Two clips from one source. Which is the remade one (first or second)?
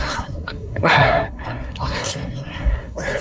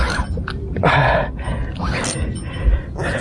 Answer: first